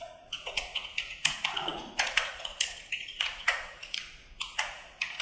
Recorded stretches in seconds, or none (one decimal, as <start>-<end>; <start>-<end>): none